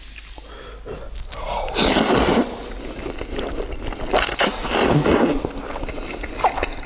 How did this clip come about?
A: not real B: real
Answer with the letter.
B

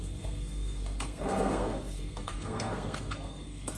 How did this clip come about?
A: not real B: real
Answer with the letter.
A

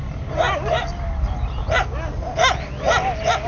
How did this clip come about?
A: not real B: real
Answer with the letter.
B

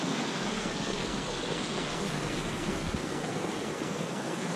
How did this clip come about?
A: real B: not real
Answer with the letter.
B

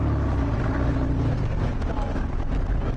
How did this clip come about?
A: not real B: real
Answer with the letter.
B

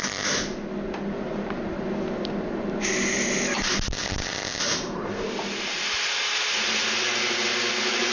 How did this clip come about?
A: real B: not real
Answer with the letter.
A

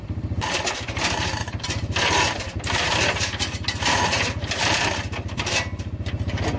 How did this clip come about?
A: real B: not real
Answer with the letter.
A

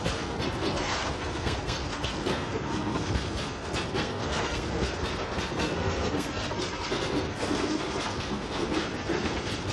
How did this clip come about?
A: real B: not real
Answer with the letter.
B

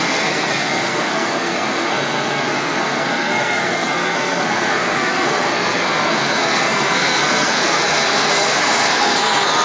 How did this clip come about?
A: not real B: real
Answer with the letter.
A